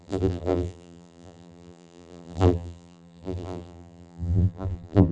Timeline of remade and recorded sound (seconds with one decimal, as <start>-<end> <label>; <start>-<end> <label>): 0.0-5.1 remade